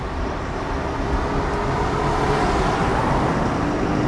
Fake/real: real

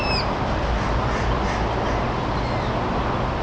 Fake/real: real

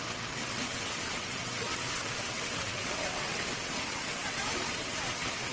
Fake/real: fake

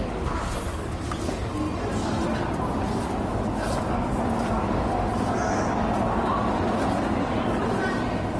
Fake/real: real